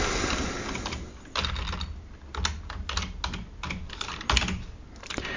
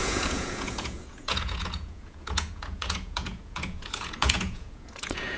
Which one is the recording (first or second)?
first